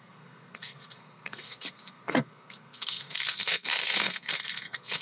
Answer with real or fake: fake